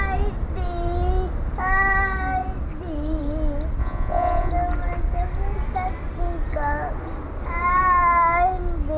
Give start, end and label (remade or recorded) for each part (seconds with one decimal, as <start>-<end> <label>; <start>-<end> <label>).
0.0-3.8 recorded; 3.8-4.5 remade; 4.5-9.0 recorded